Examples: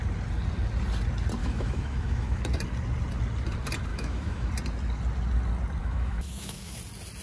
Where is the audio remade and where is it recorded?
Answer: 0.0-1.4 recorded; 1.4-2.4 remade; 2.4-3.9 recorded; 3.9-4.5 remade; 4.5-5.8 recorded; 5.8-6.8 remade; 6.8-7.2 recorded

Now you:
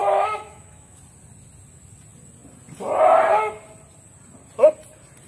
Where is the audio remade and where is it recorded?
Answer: 0.0-1.0 remade; 1.0-5.3 recorded

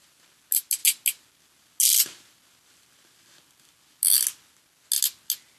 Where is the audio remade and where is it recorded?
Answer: 0.0-5.6 recorded

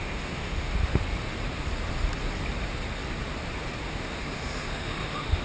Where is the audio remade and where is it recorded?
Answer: 0.0-0.7 remade; 0.7-3.9 recorded; 3.9-5.4 remade

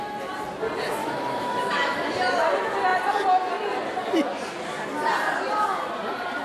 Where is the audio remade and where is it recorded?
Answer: 0.0-1.0 recorded; 1.0-2.1 remade; 2.1-6.4 recorded

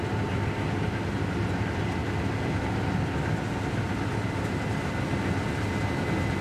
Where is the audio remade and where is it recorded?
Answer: 0.0-6.4 recorded

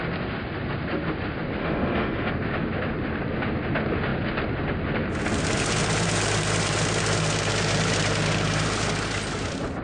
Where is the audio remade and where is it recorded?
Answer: 0.0-1.6 recorded; 1.6-2.3 remade; 2.3-9.8 recorded

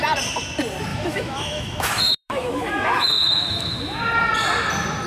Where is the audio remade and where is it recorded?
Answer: 0.0-0.9 recorded; 0.9-4.0 remade; 4.0-5.1 recorded